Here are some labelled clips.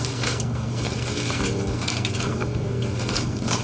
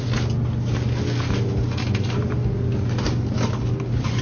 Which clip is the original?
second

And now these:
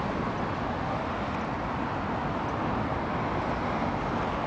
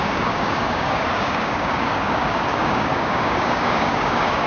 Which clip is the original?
first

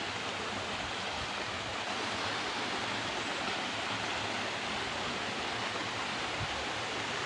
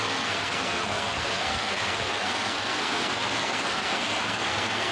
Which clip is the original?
first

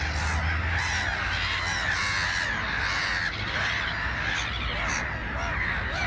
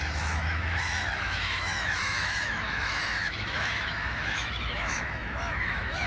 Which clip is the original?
first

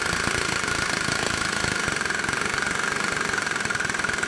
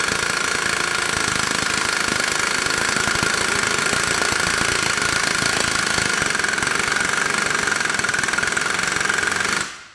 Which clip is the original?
second